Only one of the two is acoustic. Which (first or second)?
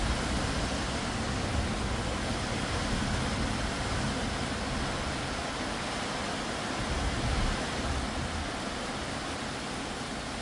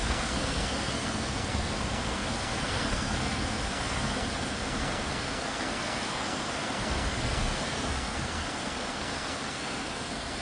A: first